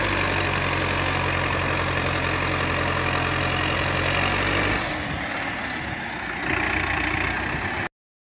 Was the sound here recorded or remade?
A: recorded